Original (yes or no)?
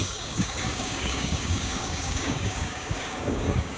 no